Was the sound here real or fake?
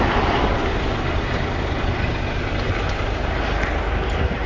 real